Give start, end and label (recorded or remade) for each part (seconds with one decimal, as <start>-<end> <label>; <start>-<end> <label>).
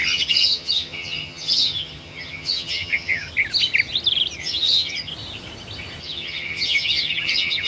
0.0-3.3 remade; 3.3-4.4 recorded; 4.4-5.1 remade; 5.1-6.0 recorded; 6.0-7.7 remade